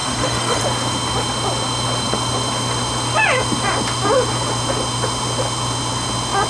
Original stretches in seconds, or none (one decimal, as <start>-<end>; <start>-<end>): 0.6-6.5